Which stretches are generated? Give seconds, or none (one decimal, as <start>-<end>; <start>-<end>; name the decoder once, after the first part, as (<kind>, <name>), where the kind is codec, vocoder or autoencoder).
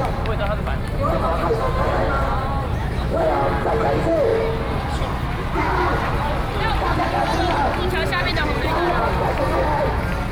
2.8-3.3 (autoencoder, DAC-VAE)